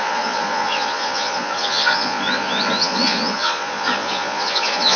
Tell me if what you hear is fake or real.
fake